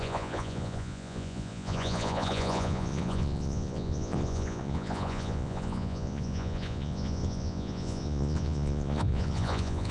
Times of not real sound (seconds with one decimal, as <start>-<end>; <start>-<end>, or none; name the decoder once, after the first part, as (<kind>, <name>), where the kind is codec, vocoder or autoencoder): 0.0-9.9 (vocoder, Vocos)